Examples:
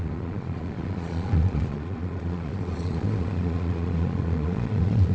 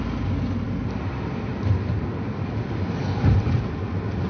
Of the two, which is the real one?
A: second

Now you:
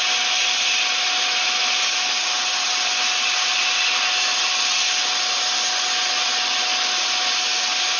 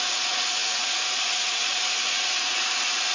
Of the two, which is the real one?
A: first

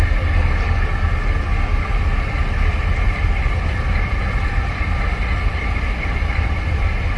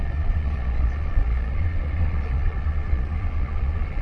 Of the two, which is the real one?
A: first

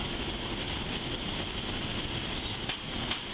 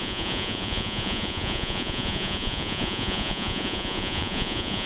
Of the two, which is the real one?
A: first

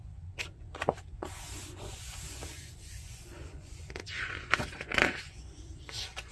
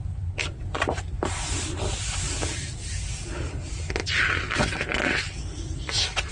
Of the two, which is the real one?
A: second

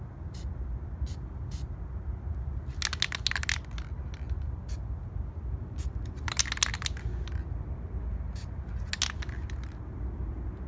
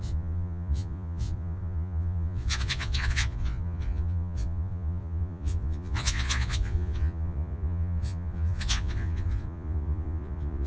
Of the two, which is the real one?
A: first